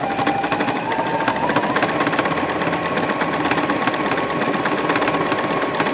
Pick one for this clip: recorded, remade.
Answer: recorded